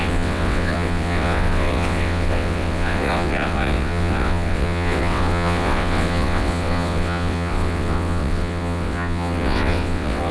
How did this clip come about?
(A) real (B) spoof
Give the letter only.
B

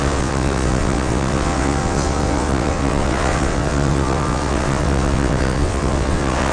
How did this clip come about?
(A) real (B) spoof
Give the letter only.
B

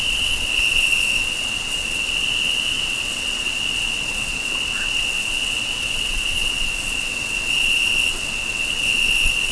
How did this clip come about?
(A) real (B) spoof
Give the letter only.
B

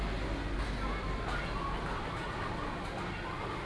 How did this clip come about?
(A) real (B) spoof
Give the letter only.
A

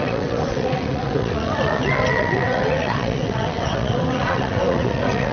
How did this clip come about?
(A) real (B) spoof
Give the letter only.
B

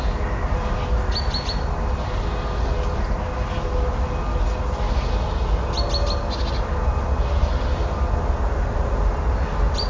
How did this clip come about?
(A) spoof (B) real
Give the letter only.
B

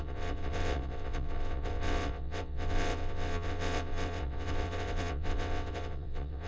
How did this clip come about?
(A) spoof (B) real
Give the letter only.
A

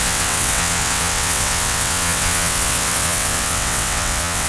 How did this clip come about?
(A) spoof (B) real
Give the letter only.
A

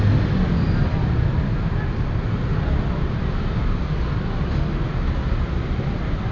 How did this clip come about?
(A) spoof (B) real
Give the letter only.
B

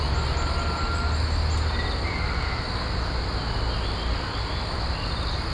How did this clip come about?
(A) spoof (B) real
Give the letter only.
B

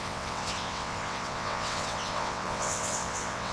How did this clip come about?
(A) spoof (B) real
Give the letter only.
A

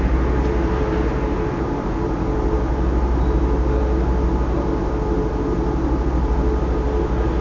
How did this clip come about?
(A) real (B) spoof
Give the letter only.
A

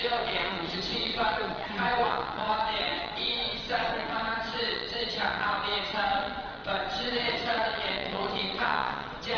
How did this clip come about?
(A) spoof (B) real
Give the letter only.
A